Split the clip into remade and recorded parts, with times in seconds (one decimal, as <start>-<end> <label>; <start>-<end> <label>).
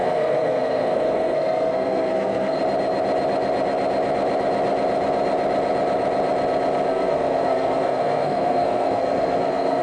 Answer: 0.0-2.6 remade; 2.6-6.9 recorded; 6.9-9.8 remade